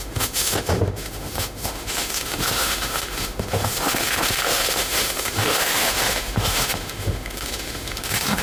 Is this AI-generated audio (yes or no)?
yes